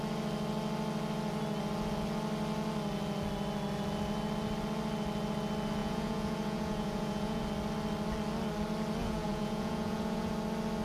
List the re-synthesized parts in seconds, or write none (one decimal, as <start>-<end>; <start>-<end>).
5.8-7.4; 9.0-10.3